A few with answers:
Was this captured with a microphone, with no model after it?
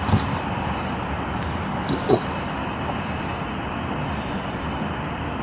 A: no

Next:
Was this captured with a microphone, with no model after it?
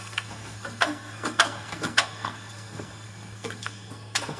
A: no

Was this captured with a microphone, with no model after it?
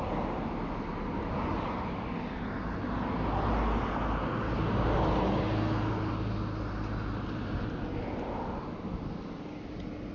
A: yes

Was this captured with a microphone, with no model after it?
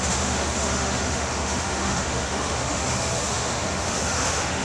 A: no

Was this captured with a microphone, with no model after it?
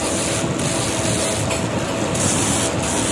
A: yes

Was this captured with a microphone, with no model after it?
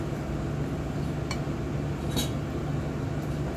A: yes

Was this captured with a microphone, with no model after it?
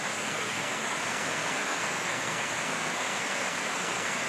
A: no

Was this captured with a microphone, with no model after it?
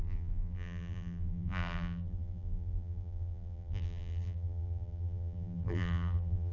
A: no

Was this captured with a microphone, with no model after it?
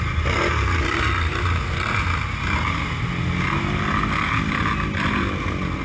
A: yes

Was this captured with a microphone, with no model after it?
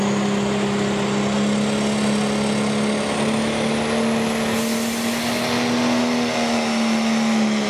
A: yes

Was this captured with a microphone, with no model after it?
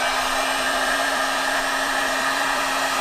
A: no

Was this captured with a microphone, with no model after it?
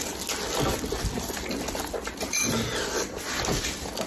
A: yes